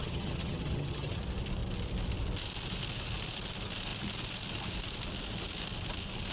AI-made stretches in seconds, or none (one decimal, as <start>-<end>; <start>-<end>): 0.0-1.2